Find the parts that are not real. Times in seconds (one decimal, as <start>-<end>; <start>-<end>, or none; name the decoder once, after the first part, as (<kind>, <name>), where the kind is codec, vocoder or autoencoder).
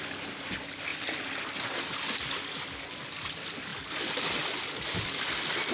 none